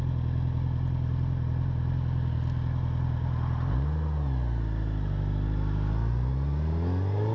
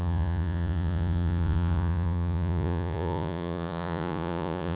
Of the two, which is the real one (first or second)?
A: first